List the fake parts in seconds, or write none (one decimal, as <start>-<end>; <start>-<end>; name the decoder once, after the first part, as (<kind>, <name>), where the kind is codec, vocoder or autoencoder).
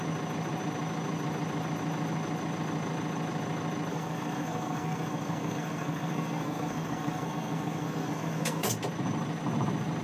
3.9-8.7 (codec, SNAC)